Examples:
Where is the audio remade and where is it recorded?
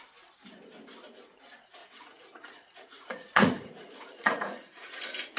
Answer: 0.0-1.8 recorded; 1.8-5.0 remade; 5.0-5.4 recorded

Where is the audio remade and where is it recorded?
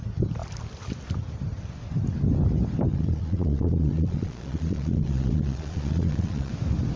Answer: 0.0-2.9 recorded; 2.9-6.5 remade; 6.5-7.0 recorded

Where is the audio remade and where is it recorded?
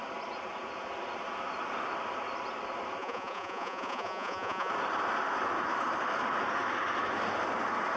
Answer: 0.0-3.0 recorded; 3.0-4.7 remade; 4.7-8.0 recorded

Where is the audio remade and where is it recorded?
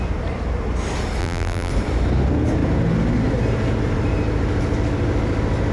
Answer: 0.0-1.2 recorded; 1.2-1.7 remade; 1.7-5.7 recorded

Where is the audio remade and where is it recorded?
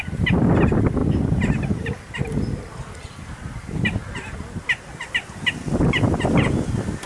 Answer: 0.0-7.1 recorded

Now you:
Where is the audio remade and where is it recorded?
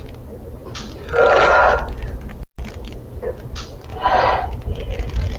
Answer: 0.0-3.9 recorded; 3.9-4.8 remade; 4.8-5.4 recorded